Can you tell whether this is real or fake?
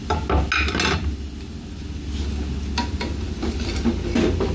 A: real